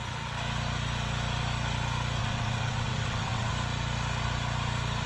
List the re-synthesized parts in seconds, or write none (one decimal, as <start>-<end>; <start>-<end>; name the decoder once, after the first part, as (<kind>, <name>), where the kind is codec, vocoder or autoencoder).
2.2-3.5 (vocoder, WaveNeXt)